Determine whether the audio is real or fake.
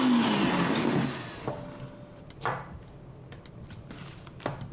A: real